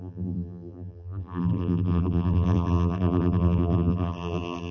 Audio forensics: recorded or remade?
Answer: remade